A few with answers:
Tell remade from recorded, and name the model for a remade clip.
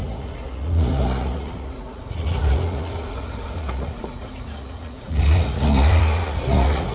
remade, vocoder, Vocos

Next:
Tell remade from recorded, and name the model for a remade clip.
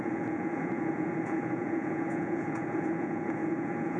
remade, vocoder, Vocos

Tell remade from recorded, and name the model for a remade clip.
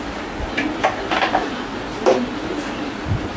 recorded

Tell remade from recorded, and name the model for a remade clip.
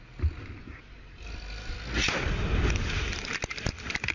recorded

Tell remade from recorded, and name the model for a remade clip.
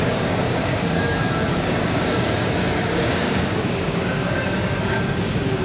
remade, codec, DAC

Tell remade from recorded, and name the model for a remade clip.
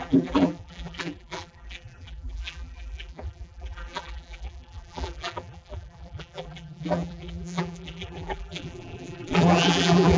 remade, vocoder, BigVGAN v2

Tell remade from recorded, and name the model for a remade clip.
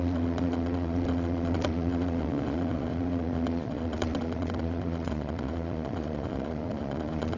remade, vocoder, Vocos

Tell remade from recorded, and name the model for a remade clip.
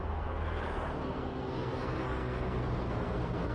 remade, codec, SNAC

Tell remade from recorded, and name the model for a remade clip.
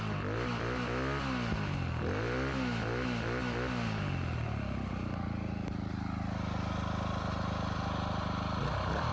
recorded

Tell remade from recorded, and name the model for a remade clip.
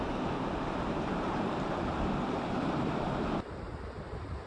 remade, vocoder, BigVGAN v2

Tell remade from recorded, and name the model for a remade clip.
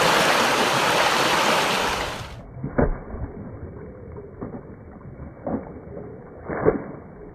recorded